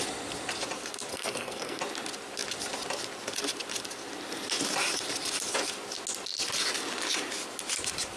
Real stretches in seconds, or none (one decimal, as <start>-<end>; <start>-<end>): 0.0-1.1; 1.8-8.2